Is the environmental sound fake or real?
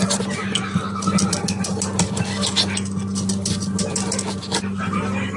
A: real